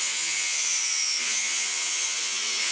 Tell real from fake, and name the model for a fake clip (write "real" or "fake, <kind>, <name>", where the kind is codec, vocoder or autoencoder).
fake, vocoder, Vocos